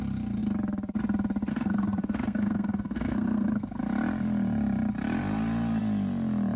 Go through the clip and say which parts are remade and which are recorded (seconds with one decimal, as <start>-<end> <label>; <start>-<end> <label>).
0.0-1.5 recorded; 1.5-3.8 remade; 3.8-6.6 recorded